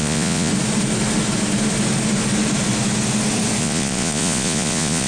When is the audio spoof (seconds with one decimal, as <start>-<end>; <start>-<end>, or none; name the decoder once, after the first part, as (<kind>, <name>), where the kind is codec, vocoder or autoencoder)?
0.0-0.5 (vocoder, Vocos); 3.6-5.1